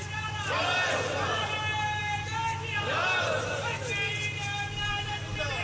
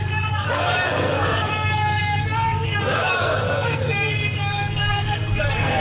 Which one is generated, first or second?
second